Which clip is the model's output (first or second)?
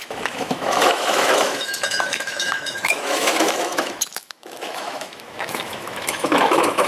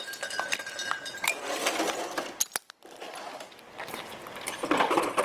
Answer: first